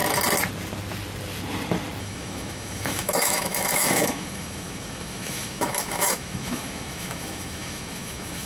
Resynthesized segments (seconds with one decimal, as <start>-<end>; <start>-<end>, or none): 2.0-8.5